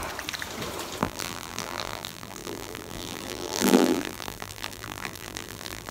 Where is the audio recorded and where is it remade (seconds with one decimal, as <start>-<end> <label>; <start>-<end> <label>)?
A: 0.0-1.0 recorded; 1.0-5.9 remade